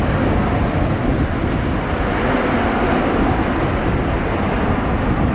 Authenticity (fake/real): real